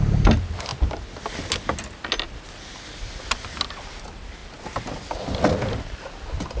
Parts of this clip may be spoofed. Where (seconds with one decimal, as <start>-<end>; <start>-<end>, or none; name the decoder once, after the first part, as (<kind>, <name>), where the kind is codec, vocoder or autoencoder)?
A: none